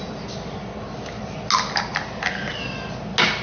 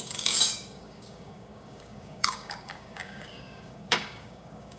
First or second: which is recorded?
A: first